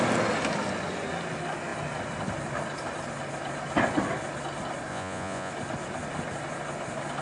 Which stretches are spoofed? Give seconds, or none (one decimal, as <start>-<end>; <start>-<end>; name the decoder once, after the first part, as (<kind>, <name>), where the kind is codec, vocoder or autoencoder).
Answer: 4.9-5.5 (vocoder, Vocos)